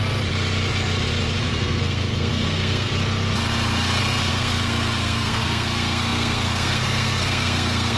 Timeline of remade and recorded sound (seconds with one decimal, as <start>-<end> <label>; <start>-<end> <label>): 0.0-1.4 recorded; 1.4-2.9 remade; 2.9-4.3 recorded; 4.3-8.0 remade